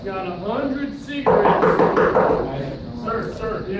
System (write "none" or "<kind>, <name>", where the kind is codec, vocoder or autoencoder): none